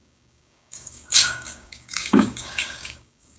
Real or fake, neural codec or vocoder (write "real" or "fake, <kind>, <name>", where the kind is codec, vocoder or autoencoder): fake, codec, DAC